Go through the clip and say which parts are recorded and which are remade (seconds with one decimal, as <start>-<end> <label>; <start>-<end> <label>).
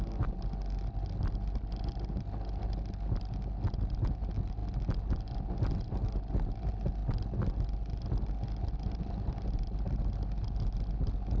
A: 0.0-11.4 recorded